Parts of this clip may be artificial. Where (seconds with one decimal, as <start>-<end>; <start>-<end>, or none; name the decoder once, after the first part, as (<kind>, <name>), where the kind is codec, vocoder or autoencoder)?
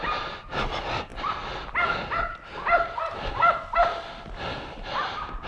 none